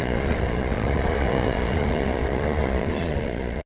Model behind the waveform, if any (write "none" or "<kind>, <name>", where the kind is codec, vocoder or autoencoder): vocoder, Vocos